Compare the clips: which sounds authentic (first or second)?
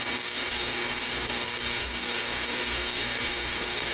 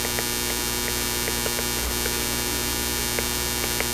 second